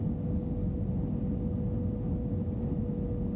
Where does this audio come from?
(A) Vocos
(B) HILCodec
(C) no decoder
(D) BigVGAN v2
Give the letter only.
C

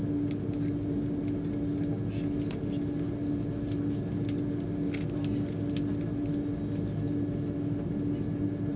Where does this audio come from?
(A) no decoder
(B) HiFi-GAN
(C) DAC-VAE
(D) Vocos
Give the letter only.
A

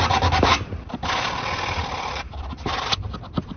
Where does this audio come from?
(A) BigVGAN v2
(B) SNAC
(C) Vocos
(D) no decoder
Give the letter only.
D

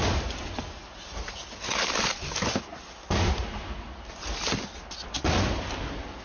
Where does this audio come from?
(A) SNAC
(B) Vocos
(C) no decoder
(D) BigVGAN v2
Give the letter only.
C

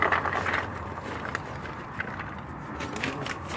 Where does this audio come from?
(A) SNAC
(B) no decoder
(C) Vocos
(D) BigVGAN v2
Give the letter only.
B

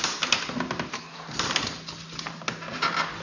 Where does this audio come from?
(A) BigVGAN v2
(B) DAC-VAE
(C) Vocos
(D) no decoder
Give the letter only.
D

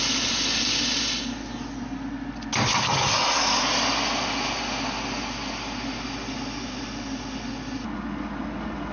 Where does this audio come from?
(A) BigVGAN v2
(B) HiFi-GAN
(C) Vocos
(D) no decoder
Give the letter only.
D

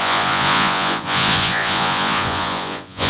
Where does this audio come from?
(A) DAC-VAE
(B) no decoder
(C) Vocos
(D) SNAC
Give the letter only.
C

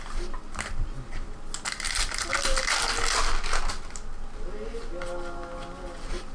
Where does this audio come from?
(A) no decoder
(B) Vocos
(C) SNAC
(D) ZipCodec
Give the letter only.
A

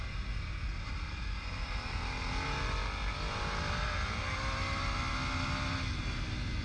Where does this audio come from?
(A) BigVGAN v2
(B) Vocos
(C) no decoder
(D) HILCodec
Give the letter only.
C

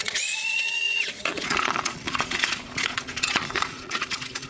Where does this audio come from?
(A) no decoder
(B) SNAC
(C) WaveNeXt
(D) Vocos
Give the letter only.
D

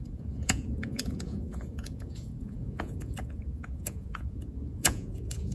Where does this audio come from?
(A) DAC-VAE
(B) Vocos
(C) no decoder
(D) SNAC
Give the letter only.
B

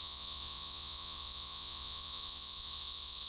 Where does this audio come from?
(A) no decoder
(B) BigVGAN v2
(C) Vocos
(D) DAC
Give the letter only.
C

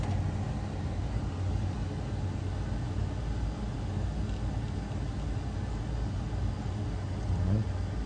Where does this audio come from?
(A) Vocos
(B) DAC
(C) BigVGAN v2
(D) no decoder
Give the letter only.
D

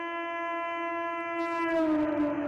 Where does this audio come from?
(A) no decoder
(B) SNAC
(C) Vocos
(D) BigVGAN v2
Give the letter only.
A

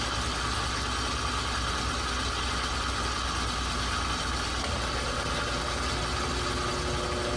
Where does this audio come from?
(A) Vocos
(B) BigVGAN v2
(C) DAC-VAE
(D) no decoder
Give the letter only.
D